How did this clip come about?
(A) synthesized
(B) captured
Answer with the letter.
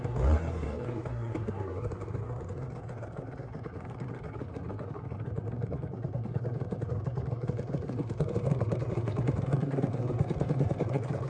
A